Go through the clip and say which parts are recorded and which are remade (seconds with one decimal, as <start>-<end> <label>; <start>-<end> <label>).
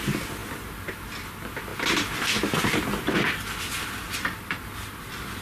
0.0-5.4 recorded